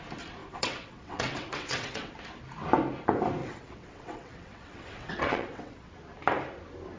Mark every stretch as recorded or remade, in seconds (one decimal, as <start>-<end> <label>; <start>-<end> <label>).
0.0-0.4 recorded; 0.4-2.1 remade; 2.1-3.4 recorded; 3.4-5.9 remade; 5.9-7.0 recorded